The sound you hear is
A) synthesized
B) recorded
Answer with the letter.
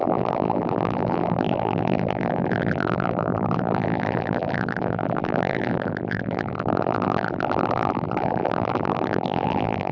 A